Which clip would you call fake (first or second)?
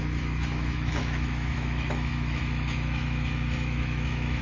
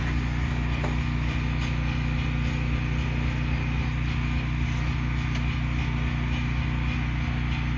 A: first